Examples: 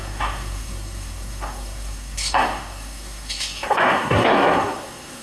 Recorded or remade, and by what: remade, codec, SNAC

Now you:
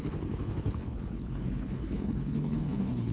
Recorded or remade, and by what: remade, codec, HILCodec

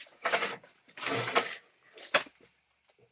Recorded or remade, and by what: recorded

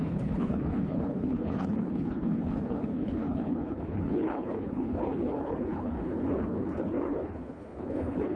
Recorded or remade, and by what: remade, codec, HILCodec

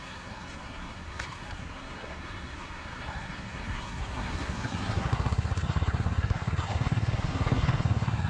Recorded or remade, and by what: remade, codec, SNAC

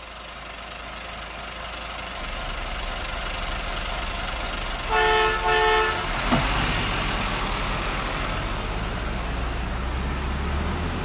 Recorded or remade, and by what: recorded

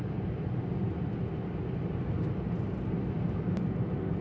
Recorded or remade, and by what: recorded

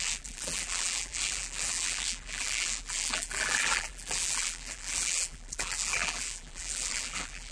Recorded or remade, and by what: remade, vocoder, BigVGAN v2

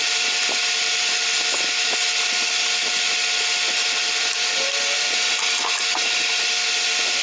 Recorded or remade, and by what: recorded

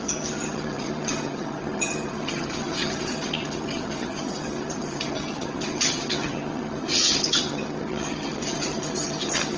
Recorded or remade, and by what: remade, vocoder, HiFi-GAN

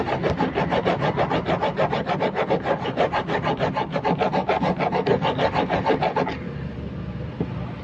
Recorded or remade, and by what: recorded